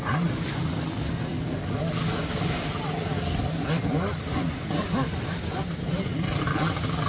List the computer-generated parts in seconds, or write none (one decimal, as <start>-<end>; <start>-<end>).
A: none